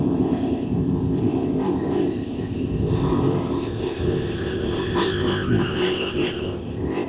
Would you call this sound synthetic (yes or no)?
yes